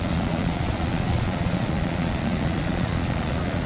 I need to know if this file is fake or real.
fake